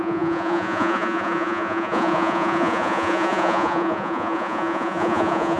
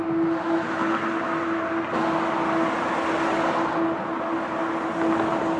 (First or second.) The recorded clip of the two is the second